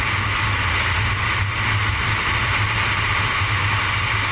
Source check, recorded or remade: recorded